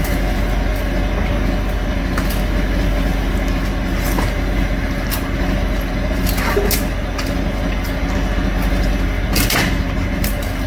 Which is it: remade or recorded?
recorded